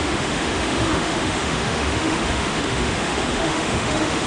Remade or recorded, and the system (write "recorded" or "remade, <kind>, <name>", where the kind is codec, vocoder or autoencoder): remade, autoencoder, DAC-VAE